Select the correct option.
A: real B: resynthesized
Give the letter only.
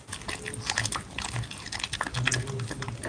A